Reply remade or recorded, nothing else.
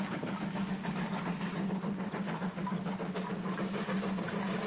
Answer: recorded